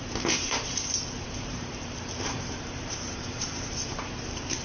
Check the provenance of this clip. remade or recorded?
remade